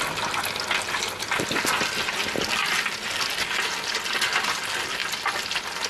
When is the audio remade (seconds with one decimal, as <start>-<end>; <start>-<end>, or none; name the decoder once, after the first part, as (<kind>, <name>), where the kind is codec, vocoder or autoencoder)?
none